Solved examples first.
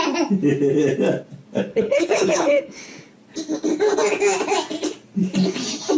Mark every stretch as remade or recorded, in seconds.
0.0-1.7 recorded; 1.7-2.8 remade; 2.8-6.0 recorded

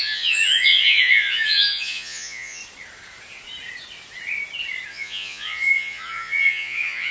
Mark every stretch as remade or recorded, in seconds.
0.0-2.6 remade; 2.6-4.9 recorded; 4.9-7.1 remade

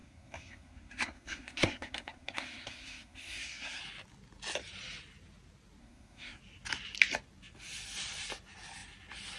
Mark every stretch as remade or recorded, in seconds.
0.0-3.8 remade; 3.8-5.8 recorded; 5.8-6.4 remade; 6.4-9.4 recorded

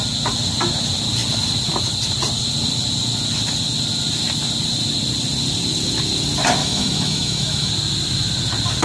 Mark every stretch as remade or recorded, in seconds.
0.0-6.6 recorded; 6.6-7.7 remade; 7.7-8.8 recorded

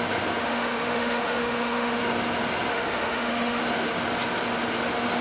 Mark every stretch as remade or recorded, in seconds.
0.0-0.4 recorded; 0.4-2.0 remade; 2.0-2.7 recorded; 2.7-3.6 remade; 3.6-5.2 recorded

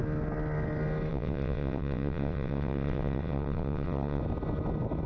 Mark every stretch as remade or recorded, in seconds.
0.0-1.1 recorded; 1.1-4.2 remade; 4.2-5.1 recorded

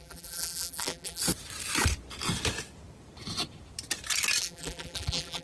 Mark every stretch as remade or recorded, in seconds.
0.0-1.2 remade; 1.2-4.4 recorded; 4.4-5.4 remade